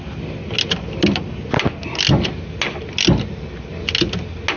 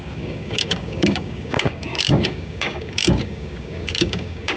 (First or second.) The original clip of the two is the first